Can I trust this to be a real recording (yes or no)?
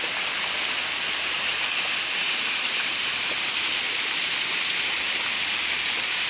yes